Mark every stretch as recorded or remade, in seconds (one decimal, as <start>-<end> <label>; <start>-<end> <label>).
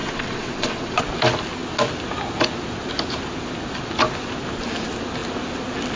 0.0-1.0 remade; 1.0-6.0 recorded